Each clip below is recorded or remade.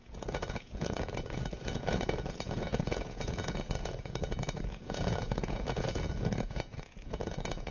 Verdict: remade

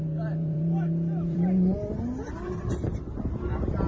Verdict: remade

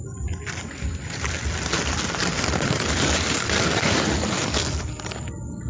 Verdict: recorded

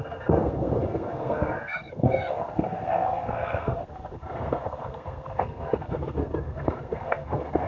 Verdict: remade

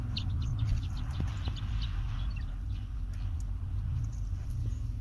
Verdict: recorded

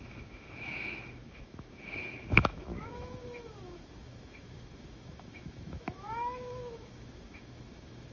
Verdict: remade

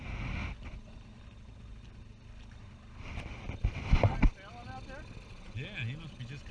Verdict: recorded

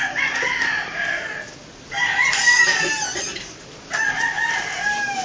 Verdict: recorded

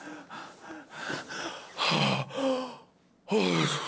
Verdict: recorded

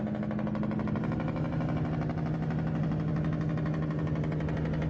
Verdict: recorded